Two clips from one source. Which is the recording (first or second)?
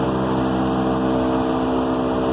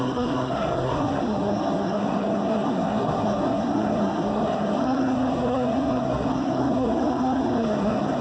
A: first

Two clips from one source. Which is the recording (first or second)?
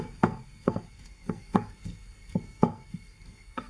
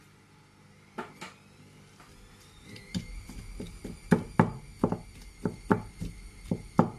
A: second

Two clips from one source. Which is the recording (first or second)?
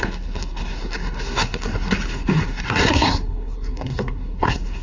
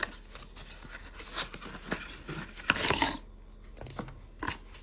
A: second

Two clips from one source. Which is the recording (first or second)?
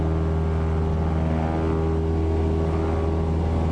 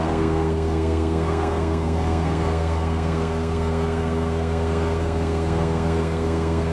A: first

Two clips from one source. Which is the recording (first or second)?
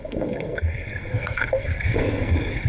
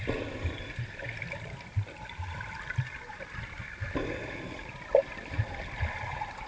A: second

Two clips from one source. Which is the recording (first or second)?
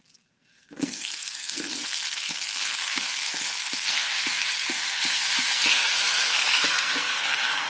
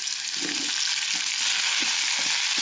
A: second